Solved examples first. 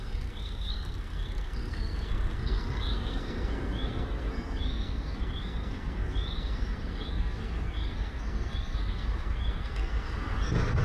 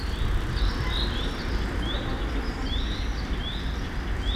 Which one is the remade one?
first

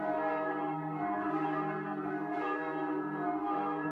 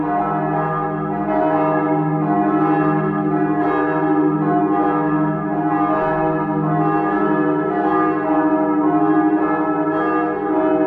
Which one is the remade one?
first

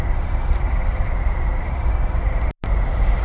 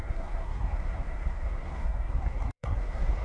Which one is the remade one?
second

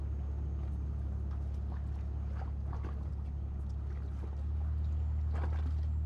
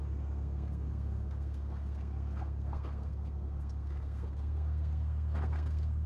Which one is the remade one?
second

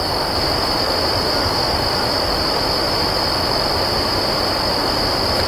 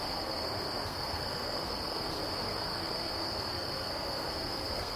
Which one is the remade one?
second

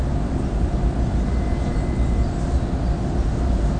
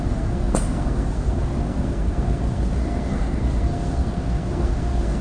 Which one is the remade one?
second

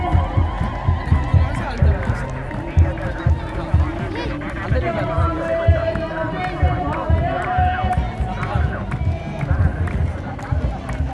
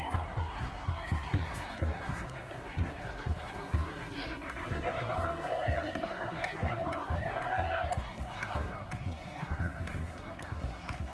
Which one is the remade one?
second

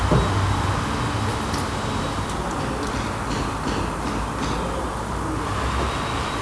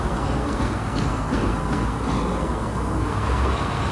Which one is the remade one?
second